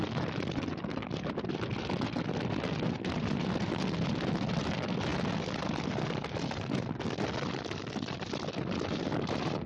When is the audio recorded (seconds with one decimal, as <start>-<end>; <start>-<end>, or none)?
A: 0.0-9.7